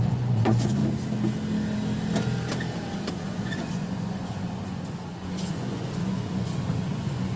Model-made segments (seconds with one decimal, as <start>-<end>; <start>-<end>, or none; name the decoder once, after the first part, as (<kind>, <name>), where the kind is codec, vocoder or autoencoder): 0.0-0.8 (vocoder, Vocos); 3.1-7.4